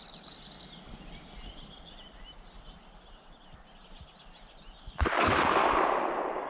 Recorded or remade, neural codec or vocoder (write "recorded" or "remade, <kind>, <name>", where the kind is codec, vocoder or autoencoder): recorded